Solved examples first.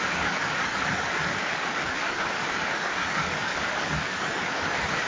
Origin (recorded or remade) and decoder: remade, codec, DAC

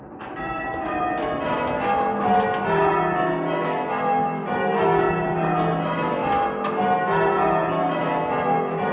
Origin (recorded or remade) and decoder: recorded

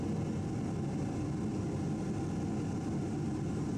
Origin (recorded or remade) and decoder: recorded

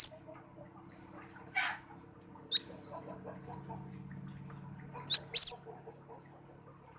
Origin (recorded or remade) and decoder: recorded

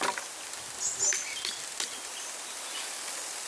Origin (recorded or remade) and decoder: recorded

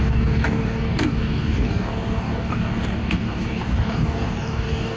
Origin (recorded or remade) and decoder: remade, codec, DAC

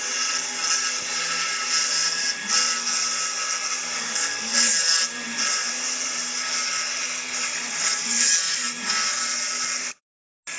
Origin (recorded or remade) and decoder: recorded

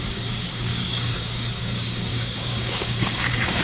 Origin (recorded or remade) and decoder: remade, codec, DAC